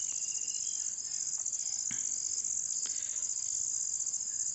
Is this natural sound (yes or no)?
yes